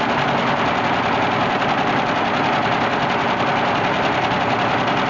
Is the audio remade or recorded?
recorded